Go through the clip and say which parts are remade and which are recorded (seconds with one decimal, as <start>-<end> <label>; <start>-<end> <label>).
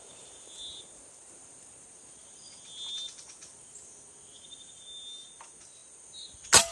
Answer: 0.0-6.7 recorded